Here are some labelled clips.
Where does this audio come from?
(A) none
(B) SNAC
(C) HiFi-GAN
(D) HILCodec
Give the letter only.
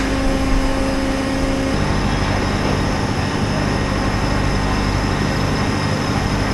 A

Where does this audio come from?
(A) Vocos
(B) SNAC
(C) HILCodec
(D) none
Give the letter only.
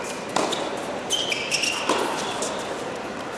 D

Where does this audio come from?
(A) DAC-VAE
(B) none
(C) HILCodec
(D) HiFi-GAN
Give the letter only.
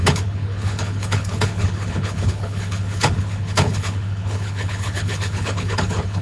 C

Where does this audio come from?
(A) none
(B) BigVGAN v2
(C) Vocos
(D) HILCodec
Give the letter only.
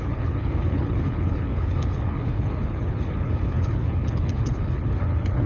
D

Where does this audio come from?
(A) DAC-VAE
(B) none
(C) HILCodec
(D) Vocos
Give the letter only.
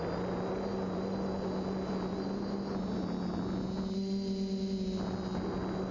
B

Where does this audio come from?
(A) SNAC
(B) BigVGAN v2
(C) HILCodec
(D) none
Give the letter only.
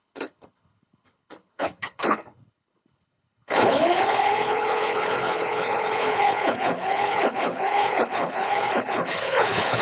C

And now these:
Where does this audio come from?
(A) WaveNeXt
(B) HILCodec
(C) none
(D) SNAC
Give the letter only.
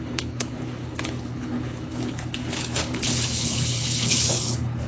B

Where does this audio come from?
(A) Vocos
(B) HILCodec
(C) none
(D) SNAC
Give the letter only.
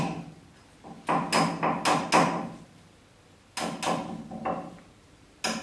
C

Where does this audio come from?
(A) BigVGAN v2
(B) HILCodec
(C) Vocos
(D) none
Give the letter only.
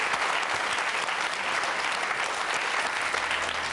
D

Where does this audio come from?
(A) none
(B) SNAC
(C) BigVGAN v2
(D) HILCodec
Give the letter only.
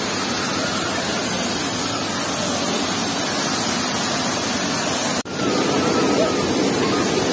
A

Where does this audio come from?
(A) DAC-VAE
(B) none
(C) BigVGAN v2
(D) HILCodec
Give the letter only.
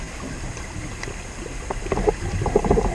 B